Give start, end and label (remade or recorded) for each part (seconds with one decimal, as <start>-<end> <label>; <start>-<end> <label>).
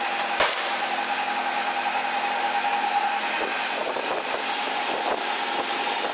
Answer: 0.0-6.1 recorded